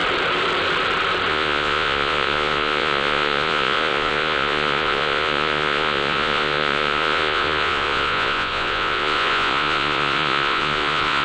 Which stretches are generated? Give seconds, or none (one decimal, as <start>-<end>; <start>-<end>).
1.3-11.2